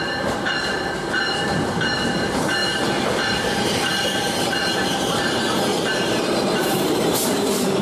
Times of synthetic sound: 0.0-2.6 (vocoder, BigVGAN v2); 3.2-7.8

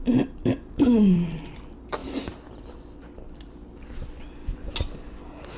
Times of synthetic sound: 0.0-2.0 (vocoder, BigVGAN v2)

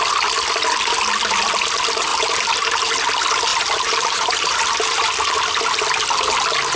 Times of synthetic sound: 2.1-2.9 (vocoder, BigVGAN v2); 3.5-5.1

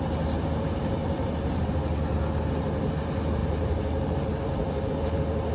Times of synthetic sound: 1.0-1.7 (vocoder, BigVGAN v2); 3.4-4.9

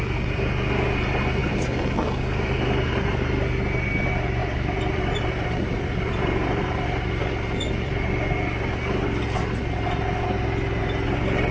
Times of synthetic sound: 4.4-7.1 (vocoder, BigVGAN v2)

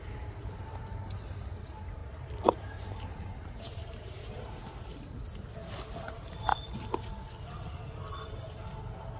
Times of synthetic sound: 2.0-5.2 (vocoder, BigVGAN v2)

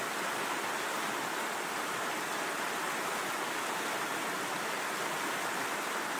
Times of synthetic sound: none